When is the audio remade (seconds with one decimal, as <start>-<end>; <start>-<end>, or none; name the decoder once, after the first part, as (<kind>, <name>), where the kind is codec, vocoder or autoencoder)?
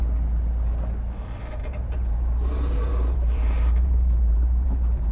1.6-5.1 (vocoder, BigVGAN v2)